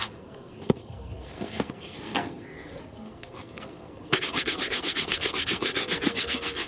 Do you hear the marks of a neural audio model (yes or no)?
yes